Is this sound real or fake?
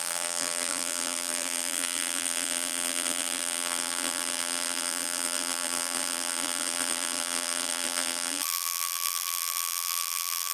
fake